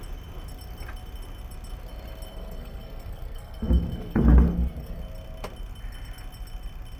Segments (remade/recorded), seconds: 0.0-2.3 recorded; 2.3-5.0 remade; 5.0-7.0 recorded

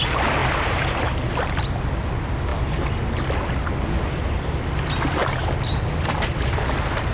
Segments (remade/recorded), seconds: 0.0-7.1 recorded

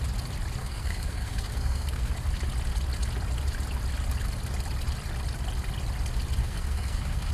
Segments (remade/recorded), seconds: 0.0-0.6 recorded; 0.6-2.1 remade; 2.1-6.4 recorded; 6.4-7.3 remade